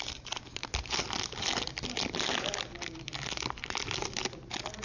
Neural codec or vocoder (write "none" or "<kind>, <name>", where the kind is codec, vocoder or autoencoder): none